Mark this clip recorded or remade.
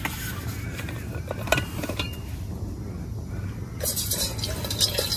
recorded